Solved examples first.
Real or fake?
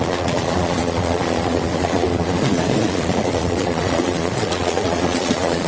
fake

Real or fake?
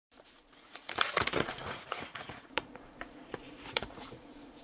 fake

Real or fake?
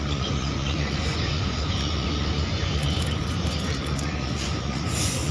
fake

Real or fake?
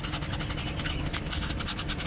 real